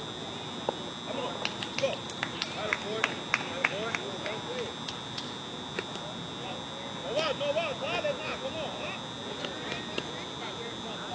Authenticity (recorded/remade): recorded